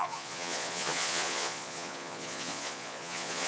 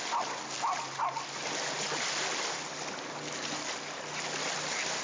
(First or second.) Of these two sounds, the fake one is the first